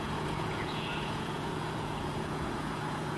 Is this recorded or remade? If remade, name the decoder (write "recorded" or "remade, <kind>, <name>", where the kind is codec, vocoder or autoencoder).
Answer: remade, vocoder, Vocos